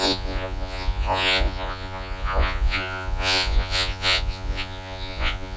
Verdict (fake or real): fake